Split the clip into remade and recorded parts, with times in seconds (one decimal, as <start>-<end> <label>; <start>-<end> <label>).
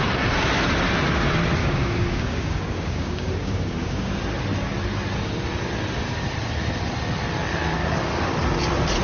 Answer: 0.0-1.6 recorded; 1.6-4.1 remade; 4.1-9.0 recorded